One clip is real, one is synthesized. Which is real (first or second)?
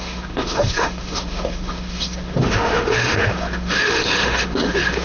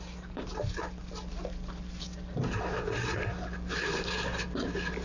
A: second